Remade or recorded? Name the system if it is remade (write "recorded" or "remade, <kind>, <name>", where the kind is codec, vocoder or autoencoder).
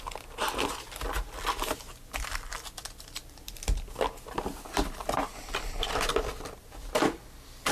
recorded